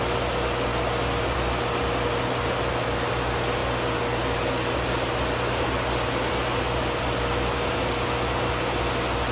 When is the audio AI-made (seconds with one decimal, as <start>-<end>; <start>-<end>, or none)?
none